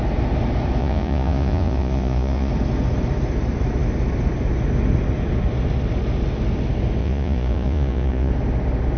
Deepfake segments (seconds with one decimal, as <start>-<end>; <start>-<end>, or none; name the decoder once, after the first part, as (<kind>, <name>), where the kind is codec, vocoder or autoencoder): 0.8-2.5 (vocoder, Vocos); 7.0-8.3